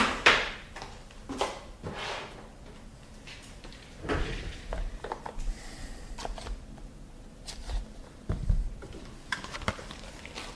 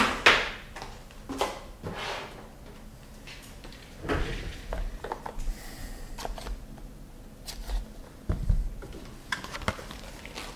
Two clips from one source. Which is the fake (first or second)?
first